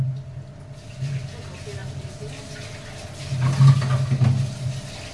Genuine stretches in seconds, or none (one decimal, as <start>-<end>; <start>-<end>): 0.0-5.1